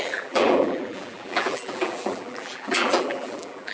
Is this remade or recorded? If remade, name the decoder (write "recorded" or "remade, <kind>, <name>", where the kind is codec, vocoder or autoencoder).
remade, vocoder, BigVGAN v2